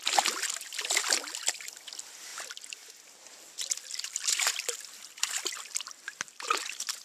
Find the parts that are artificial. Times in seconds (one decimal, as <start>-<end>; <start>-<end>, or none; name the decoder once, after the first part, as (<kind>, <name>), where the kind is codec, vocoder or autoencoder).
0.0-7.0 (vocoder, BigVGAN v2)